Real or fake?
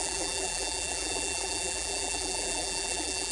fake